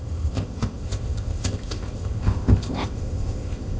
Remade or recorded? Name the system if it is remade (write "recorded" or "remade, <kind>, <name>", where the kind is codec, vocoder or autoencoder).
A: remade, codec, ZipCodec